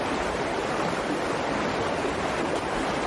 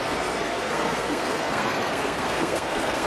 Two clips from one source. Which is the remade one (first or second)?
second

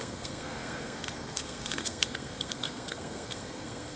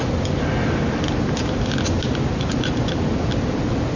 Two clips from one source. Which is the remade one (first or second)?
first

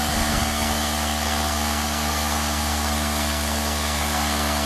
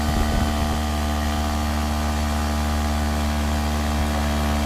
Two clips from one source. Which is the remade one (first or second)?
first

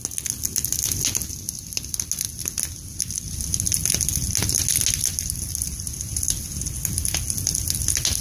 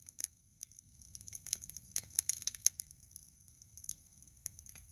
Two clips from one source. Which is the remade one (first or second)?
second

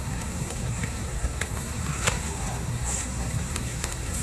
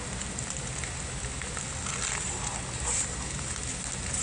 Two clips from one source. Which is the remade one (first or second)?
first